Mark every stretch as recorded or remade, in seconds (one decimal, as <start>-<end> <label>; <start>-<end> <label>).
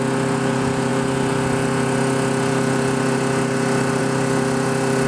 0.0-5.1 recorded